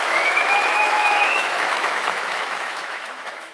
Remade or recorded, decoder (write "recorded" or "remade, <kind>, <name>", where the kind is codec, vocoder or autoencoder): remade, autoencoder, DAC-VAE